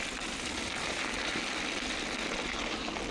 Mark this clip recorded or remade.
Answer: recorded